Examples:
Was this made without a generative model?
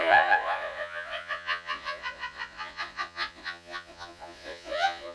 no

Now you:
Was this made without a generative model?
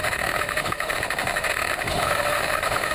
no